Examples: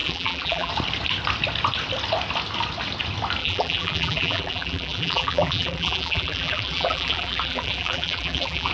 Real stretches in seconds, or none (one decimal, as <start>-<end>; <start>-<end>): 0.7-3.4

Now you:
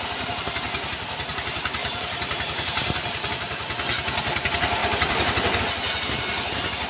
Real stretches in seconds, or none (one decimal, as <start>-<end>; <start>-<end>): 0.0-1.8; 3.3-4.8; 5.6-6.9

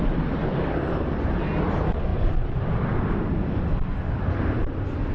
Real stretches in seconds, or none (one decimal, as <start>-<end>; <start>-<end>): 0.0-2.1; 2.7-5.1

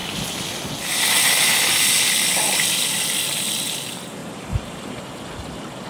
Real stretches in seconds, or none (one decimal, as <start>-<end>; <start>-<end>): 0.0-4.2; 4.9-5.9